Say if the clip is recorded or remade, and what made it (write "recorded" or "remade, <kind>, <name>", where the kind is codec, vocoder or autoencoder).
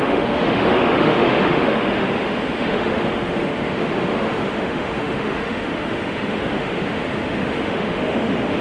remade, autoencoder, DAC-VAE